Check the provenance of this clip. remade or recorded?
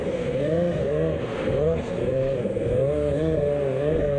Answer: remade